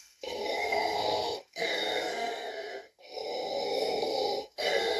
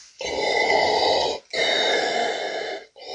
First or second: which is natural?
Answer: second